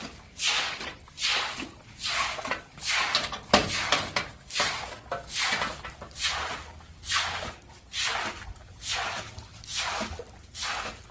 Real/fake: real